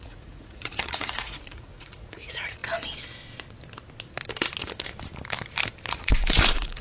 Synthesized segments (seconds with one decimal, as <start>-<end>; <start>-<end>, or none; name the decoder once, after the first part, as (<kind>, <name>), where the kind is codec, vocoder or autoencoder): 0.0-2.6 (vocoder, Vocos); 5.9-6.8